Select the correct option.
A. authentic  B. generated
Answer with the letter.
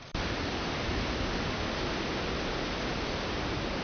A